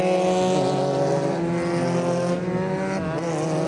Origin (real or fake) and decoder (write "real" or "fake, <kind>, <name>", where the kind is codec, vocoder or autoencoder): real